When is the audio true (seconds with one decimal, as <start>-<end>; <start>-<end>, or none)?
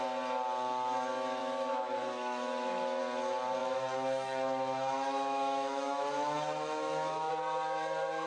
0.0-1.4; 3.0-3.6; 7.3-8.3